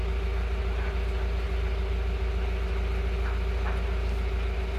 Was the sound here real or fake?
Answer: real